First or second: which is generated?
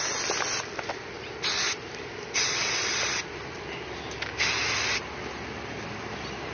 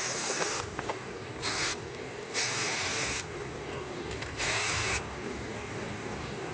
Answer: second